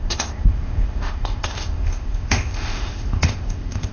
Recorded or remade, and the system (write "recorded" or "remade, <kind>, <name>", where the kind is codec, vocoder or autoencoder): remade, codec, ZipCodec